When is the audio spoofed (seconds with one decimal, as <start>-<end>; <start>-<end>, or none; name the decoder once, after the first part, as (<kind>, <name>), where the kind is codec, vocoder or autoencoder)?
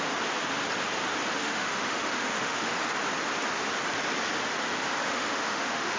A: 1.4-2.7 (autoencoder, DAC-VAE); 5.0-6.0